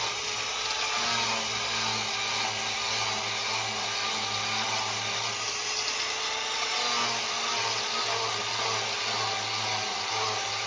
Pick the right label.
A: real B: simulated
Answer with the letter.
A